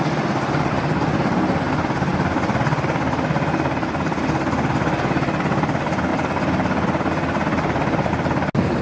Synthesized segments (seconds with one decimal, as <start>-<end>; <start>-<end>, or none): none